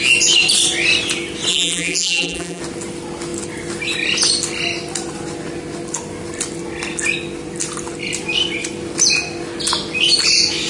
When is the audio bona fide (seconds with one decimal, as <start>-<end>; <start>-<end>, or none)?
0.0-1.5; 2.6-10.7